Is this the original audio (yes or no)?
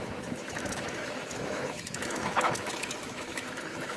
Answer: no